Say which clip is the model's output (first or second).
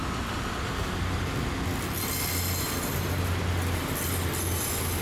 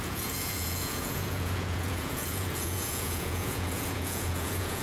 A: second